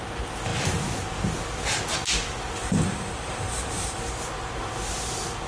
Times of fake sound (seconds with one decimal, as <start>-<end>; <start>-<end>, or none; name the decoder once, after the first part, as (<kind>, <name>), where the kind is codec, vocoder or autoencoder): 2.6-4.0 (vocoder, BigVGAN v2)